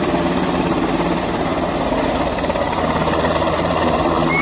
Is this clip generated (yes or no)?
yes